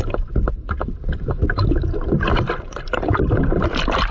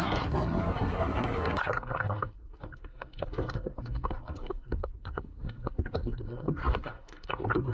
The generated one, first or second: second